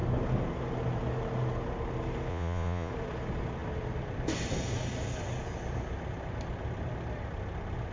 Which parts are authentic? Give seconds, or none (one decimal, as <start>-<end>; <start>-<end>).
0.0-2.3; 2.9-7.9